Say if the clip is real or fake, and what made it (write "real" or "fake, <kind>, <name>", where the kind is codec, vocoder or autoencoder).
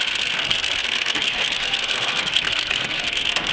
fake, codec, SNAC